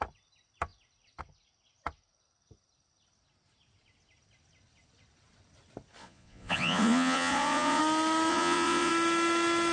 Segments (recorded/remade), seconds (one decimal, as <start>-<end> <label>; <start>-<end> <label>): 0.0-6.0 recorded; 6.0-7.8 remade; 7.8-8.3 recorded; 8.3-8.9 remade; 8.9-9.7 recorded